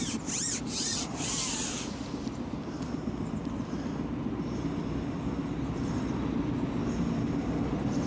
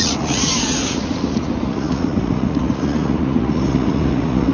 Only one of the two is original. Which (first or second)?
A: first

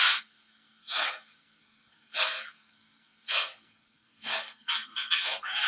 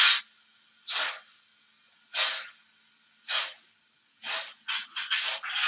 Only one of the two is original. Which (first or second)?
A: second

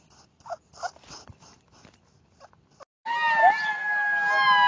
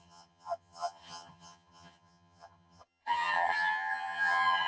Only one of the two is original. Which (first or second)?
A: first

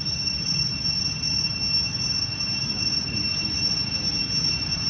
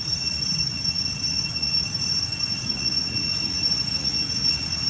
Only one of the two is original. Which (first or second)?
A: first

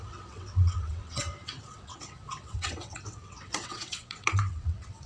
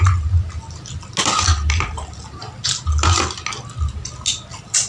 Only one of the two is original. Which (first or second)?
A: second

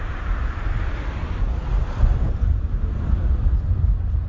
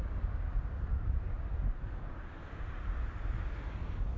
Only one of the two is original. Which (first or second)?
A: second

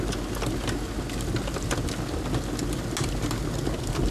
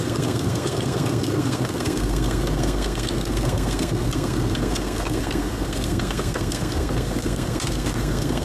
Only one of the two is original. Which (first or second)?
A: first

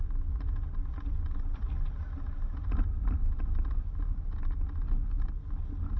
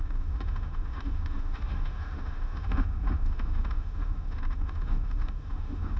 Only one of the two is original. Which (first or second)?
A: first